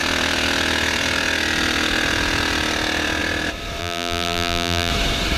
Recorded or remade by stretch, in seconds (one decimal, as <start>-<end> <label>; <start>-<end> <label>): 0.0-3.8 recorded; 3.8-4.9 remade; 4.9-5.4 recorded

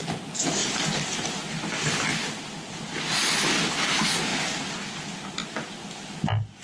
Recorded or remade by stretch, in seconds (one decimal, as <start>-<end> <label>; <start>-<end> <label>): 0.0-6.6 recorded

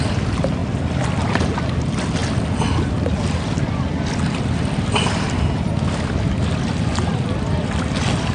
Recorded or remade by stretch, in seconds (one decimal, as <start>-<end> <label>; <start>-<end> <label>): 0.0-8.3 recorded